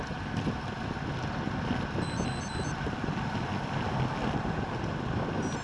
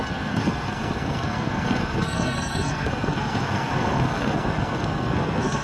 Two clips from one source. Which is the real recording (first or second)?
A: first